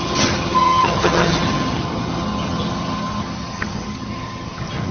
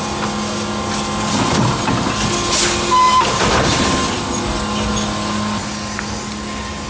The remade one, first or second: first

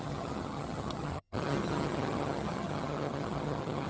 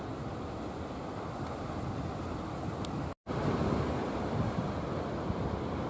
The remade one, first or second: first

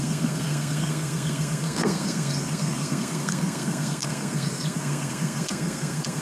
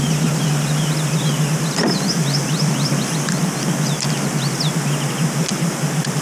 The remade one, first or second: first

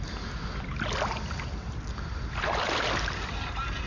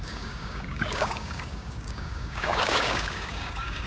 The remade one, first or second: second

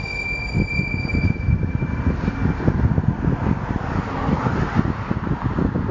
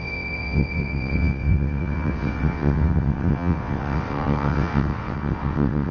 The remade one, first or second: second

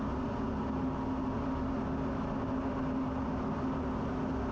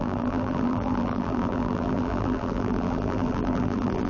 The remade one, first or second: second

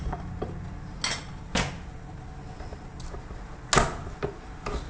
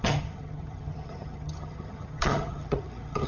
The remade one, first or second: second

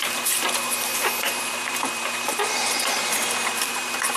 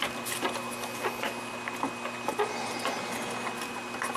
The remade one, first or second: first